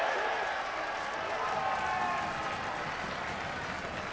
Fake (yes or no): no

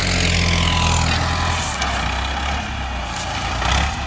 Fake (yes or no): no